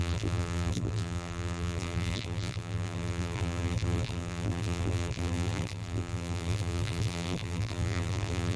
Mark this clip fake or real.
fake